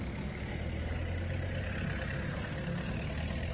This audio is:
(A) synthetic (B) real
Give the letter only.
B